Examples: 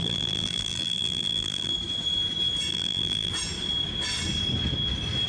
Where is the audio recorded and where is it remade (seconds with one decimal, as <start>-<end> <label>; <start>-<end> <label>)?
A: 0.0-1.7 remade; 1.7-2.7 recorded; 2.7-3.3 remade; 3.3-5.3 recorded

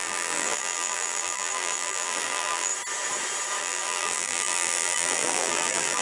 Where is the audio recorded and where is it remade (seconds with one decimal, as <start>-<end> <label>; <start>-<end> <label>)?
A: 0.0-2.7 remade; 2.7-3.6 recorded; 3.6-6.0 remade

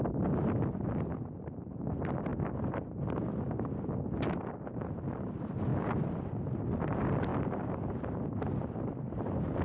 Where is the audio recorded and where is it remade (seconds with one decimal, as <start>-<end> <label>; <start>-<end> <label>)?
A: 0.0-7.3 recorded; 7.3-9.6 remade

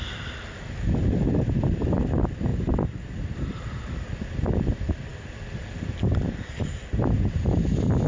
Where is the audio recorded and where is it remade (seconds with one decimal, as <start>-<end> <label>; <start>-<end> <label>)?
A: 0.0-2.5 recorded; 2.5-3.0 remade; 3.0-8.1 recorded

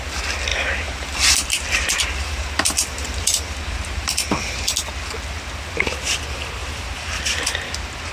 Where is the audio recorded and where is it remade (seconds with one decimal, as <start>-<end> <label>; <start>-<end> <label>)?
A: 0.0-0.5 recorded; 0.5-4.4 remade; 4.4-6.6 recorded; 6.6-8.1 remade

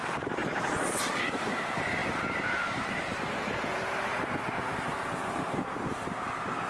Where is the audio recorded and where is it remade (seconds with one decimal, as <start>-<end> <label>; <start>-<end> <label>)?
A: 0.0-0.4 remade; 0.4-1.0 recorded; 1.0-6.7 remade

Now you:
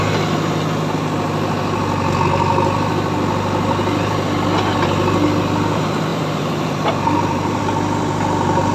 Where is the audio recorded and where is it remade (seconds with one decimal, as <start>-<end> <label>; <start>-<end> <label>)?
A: 0.0-6.1 recorded; 6.1-7.6 remade; 7.6-8.7 recorded

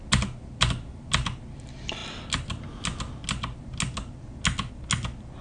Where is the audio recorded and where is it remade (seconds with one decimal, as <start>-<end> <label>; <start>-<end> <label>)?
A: 0.0-5.4 recorded